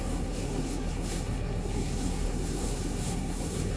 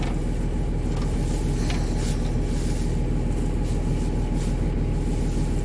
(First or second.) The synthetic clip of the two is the first